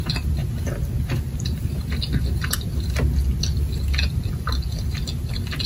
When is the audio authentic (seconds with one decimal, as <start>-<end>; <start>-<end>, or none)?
0.0-5.7